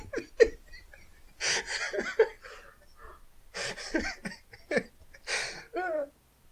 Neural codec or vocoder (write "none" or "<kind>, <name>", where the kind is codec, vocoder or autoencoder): none